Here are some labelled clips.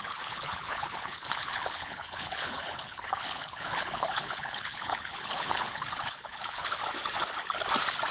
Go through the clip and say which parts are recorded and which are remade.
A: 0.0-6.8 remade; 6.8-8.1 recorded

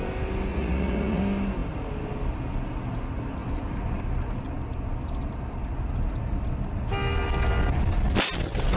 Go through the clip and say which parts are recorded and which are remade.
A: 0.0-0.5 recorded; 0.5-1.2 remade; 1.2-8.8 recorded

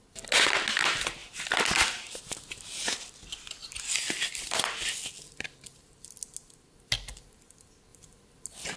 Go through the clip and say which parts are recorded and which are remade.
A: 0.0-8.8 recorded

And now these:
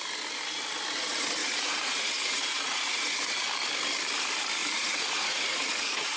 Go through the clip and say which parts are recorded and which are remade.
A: 0.0-1.4 recorded; 1.4-3.5 remade; 3.5-4.6 recorded; 4.6-6.2 remade